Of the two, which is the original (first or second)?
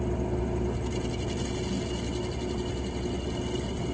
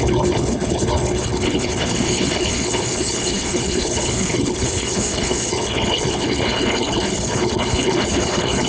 first